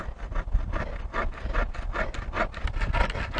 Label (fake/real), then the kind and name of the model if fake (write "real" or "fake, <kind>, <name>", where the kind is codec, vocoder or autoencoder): real